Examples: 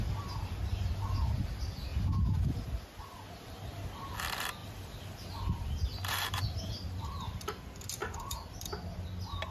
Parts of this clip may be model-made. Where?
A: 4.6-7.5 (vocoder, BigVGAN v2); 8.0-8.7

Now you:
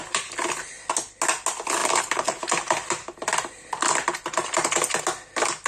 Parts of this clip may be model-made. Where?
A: 0.0-0.9 (vocoder, BigVGAN v2); 1.8-5.0

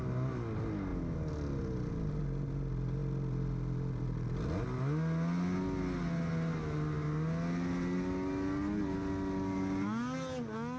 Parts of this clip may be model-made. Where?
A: none

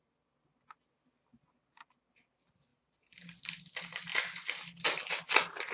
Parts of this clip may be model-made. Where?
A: 2.7-3.6 (vocoder, BigVGAN v2)

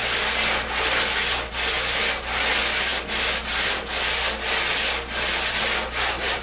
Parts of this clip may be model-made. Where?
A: none

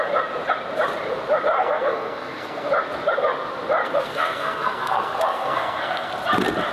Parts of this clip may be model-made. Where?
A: 1.6-2.7 (codec, SNAC); 3.8-6.1